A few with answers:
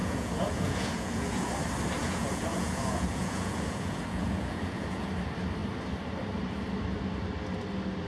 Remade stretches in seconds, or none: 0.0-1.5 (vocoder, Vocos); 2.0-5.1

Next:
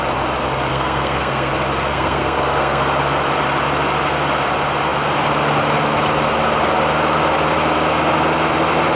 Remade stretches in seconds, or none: 0.7-1.5 (codec, SNAC); 1.9-2.8

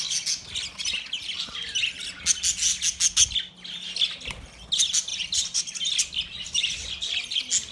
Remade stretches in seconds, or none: 0.8-1.8 (vocoder, BigVGAN v2); 5.1-5.6